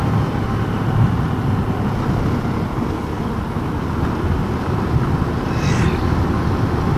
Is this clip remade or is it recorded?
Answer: recorded